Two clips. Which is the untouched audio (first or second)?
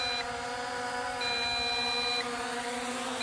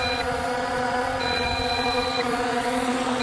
first